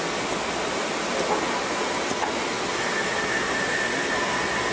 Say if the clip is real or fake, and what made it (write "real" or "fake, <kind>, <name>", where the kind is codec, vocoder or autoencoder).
real